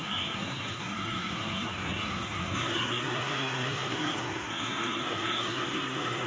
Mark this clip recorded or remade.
remade